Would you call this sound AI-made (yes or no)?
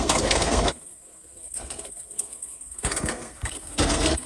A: yes